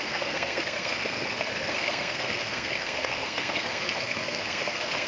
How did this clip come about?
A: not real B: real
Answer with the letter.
A